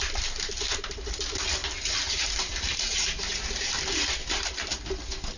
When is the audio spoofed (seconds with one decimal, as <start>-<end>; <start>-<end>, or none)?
1.6-4.8